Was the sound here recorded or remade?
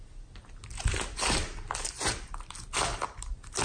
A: recorded